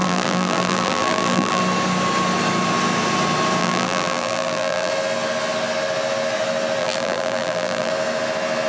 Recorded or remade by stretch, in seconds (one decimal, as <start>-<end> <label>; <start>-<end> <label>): 0.0-1.6 remade; 1.6-3.6 recorded; 3.6-4.9 remade; 4.9-6.8 recorded; 6.8-7.9 remade; 7.9-8.7 recorded